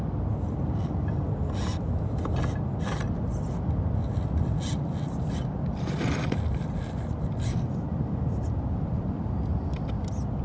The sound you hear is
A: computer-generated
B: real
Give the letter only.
B